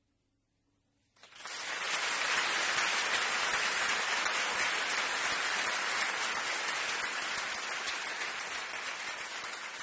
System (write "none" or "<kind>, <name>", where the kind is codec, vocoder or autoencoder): none